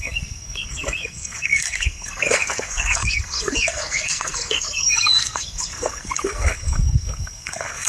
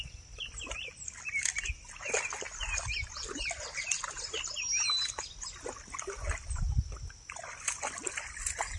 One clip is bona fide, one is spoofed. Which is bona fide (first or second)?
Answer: second